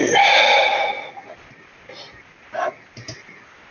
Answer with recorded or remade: recorded